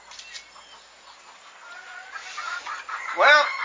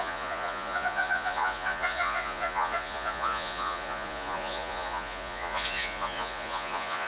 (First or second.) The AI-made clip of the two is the second